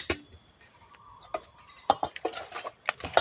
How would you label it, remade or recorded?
recorded